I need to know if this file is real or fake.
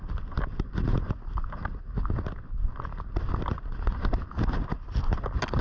real